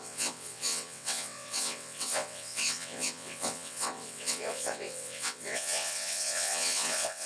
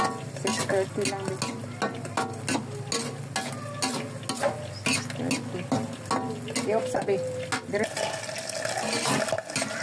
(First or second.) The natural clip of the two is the second